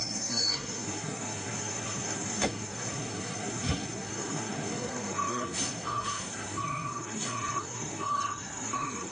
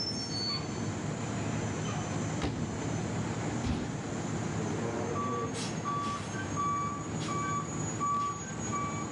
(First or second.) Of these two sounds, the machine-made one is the first